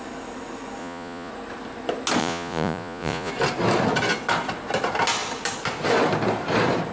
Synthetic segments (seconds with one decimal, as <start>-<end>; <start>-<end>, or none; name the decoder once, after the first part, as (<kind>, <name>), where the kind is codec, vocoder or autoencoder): 0.8-1.3 (vocoder, Vocos); 2.2-3.3